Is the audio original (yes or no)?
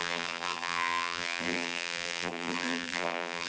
no